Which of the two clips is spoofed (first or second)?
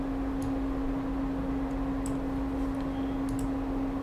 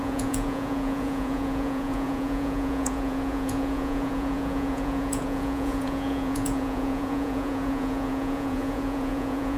second